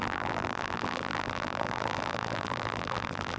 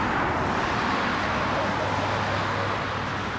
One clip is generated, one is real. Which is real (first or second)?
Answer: second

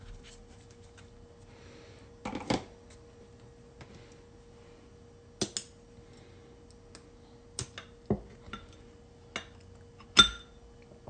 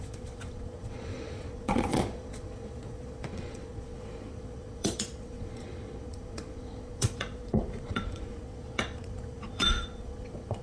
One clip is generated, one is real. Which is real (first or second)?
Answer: first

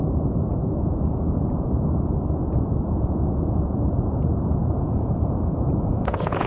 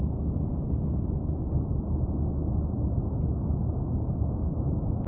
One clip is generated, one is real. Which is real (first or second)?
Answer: second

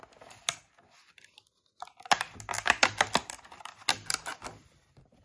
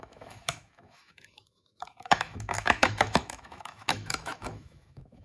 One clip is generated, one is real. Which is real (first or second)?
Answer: first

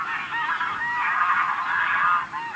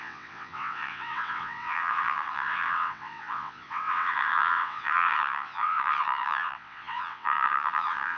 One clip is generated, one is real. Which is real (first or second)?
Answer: first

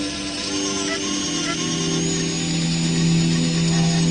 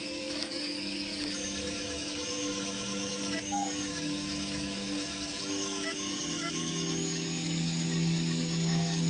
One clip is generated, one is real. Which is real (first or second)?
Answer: first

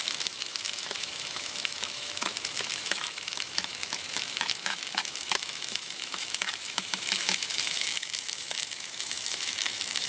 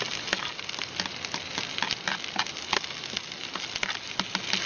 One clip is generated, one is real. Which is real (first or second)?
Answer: second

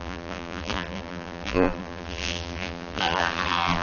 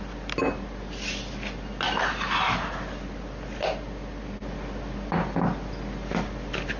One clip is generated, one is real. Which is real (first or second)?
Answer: second